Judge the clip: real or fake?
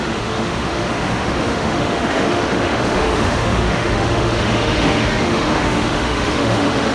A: fake